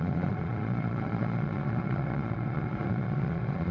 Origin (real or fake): fake